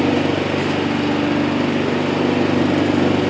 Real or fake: real